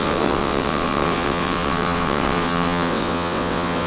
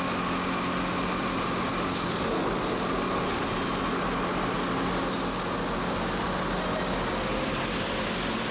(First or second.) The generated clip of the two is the first